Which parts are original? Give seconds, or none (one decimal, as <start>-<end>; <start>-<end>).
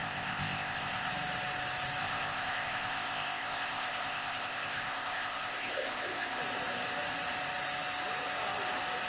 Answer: 1.1-2.0; 6.4-9.1